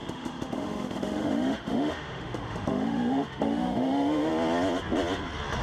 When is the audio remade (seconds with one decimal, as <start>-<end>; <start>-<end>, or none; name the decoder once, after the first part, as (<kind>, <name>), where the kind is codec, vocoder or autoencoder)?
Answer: 0.0-4.3 (autoencoder, DAC-VAE)